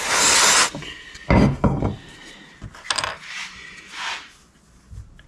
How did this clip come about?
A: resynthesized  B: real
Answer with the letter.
B